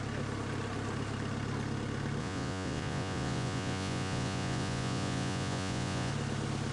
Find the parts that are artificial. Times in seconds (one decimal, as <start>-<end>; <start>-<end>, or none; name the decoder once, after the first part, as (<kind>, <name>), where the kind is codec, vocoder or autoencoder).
2.2-6.1 (vocoder, Vocos)